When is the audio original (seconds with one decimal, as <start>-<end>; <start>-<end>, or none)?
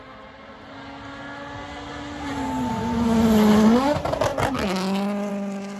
0.0-5.8